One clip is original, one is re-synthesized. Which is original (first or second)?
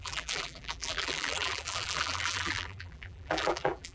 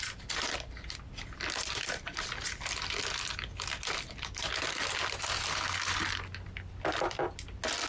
second